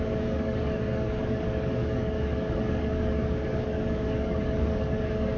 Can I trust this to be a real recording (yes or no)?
no